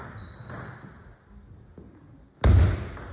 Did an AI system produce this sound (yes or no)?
no